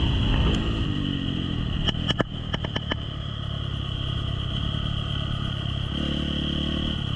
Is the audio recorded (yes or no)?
yes